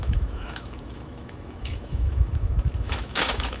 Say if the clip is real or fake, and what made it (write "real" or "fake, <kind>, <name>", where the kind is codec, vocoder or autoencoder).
fake, autoencoder, DAC-VAE